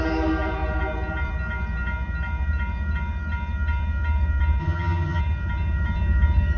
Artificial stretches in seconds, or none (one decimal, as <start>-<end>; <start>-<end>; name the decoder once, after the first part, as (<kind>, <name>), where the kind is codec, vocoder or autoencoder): 4.6-5.2 (vocoder, HiFi-GAN)

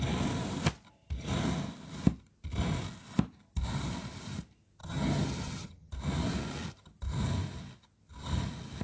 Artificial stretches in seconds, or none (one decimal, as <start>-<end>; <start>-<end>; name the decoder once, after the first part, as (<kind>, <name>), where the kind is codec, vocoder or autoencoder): 4.8-5.9 (vocoder, HiFi-GAN)

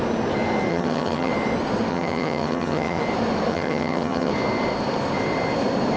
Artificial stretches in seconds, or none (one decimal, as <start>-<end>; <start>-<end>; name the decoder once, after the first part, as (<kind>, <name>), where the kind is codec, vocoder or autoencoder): 0.7-1.3 (vocoder, HiFi-GAN); 1.9-3.0; 3.5-4.3